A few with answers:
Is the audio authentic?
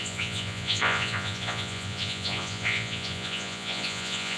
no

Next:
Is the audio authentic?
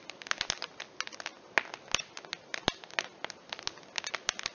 yes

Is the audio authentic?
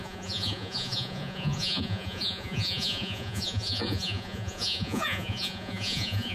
no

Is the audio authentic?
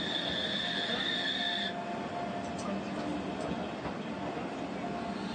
yes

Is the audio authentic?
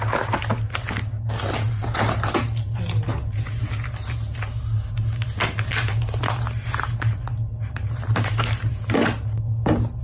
yes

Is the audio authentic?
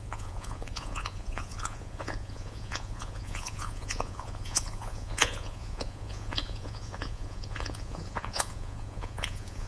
no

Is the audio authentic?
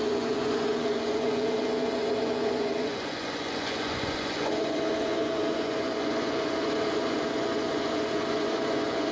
no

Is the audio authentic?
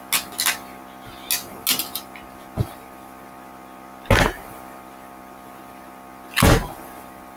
yes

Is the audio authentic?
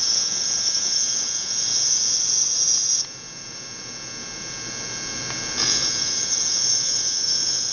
no